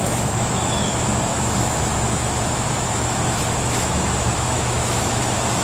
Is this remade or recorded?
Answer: remade